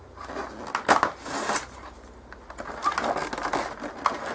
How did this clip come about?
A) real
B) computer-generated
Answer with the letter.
A